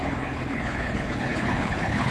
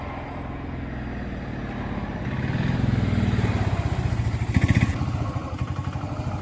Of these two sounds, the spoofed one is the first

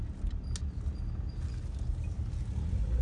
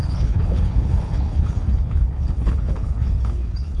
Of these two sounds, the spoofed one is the second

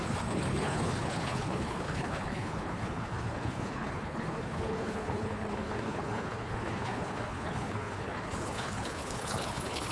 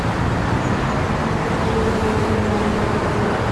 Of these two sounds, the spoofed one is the first